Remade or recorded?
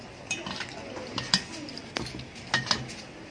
recorded